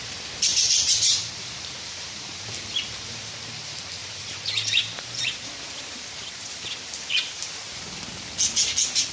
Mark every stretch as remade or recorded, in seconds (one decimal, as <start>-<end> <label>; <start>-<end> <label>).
0.0-0.5 recorded; 0.5-3.3 remade; 3.3-4.0 recorded; 4.0-8.1 remade; 8.1-9.1 recorded